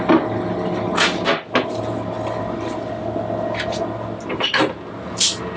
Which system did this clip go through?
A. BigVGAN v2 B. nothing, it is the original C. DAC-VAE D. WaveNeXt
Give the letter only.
B